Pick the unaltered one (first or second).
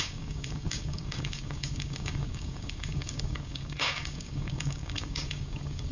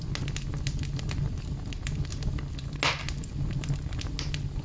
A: second